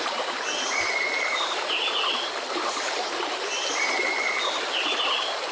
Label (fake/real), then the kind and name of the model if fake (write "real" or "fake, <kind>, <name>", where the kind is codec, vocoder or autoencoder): real